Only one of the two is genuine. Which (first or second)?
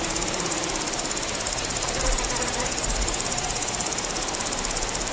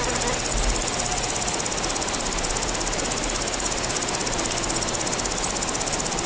second